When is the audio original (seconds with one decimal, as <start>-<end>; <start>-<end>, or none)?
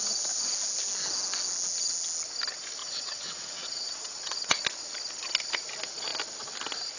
0.0-2.8; 4.6-7.0